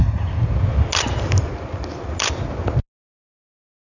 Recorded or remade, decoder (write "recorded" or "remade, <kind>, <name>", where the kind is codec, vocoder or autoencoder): recorded